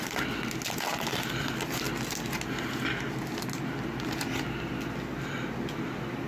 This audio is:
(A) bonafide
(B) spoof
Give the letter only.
A